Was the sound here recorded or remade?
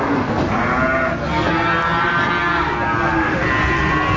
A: recorded